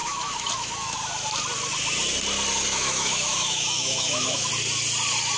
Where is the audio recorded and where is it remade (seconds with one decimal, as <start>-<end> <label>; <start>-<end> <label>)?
0.0-1.1 remade; 1.1-2.7 recorded; 2.7-4.5 remade; 4.5-5.4 recorded